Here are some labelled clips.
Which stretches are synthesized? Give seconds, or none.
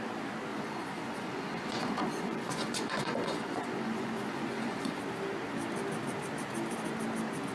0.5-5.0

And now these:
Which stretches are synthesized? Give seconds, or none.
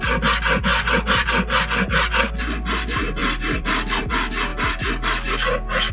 none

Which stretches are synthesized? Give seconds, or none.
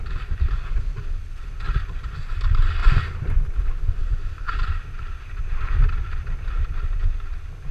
2.8-3.6